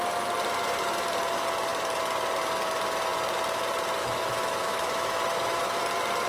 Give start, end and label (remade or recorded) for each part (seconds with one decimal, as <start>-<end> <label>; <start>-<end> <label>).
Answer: 0.0-4.0 recorded; 4.0-5.8 remade; 5.8-6.3 recorded